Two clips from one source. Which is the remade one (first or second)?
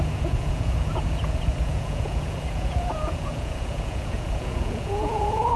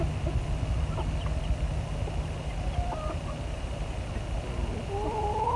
first